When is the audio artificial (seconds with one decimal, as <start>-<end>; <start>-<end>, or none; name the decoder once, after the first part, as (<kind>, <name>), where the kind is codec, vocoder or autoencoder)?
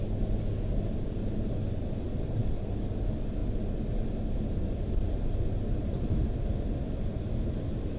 none